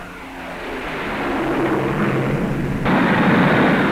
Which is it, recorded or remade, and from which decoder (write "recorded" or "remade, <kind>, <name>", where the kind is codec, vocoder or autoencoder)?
recorded